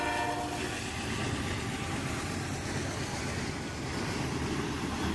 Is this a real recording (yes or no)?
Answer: yes